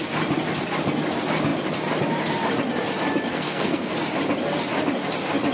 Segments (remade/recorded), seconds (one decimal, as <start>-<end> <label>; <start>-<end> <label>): 0.0-3.3 recorded; 3.3-3.9 remade; 3.9-5.5 recorded